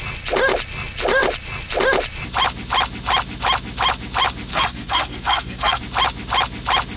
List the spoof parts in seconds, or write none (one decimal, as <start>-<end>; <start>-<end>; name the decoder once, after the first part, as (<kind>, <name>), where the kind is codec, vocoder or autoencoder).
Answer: 4.5-5.8 (codec, SNAC)